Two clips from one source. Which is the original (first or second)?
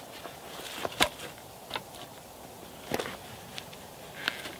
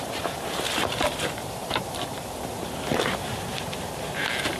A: first